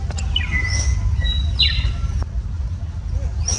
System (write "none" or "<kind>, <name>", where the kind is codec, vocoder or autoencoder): none